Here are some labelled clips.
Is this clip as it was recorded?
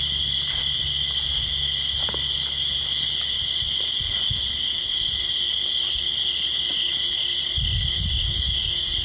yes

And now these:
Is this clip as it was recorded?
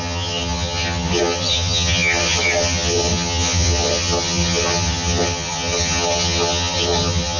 no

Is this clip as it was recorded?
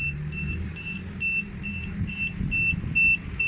yes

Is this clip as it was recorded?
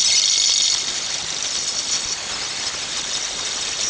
yes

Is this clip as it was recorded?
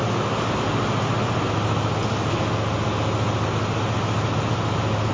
yes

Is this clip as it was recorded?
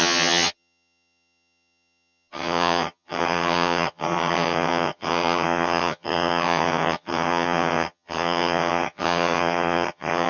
no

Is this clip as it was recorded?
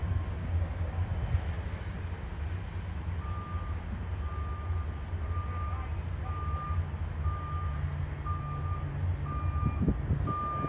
yes